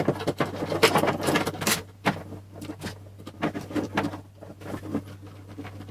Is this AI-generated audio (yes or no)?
yes